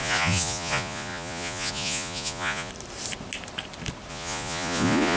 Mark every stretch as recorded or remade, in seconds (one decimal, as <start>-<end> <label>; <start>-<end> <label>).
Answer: 0.0-2.7 remade; 2.7-4.1 recorded; 4.1-5.2 remade